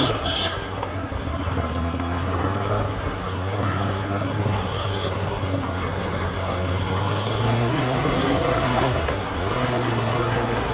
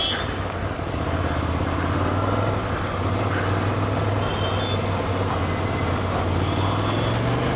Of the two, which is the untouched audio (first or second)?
second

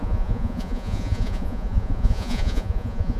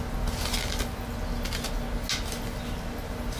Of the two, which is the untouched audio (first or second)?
second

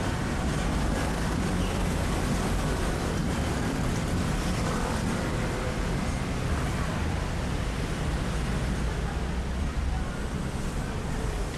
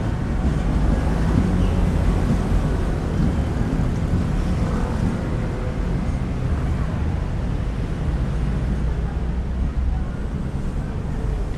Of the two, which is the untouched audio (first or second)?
second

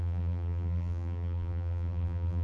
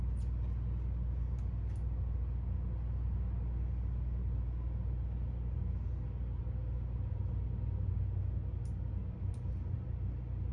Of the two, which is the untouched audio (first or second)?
second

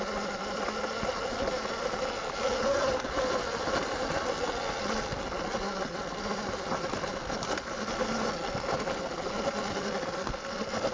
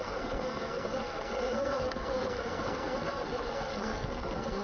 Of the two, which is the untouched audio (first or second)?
first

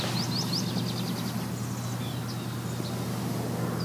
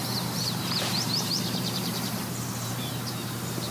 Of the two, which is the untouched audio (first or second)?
first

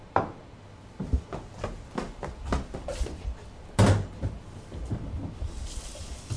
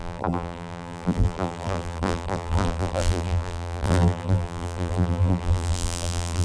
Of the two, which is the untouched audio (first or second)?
first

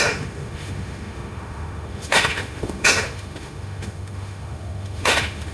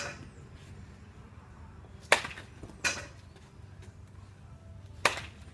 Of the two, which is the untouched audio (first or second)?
second